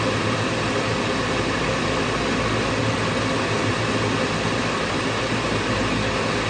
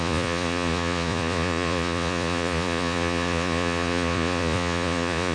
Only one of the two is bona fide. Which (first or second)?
first